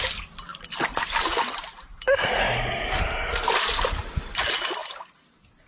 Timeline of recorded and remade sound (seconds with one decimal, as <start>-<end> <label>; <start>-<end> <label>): 0.0-5.7 recorded